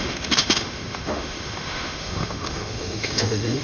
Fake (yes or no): yes